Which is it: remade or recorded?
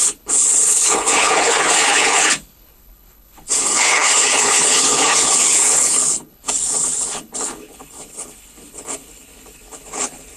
remade